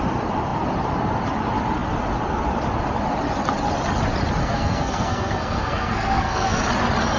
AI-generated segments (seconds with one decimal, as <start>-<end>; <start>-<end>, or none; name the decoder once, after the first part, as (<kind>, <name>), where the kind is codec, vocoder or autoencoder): 4.4-6.6 (codec, SNAC)